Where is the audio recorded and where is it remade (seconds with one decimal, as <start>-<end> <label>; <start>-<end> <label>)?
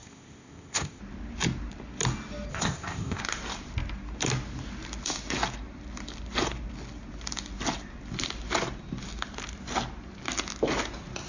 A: 0.0-1.0 remade; 1.0-2.5 recorded; 2.5-3.2 remade; 3.2-11.3 recorded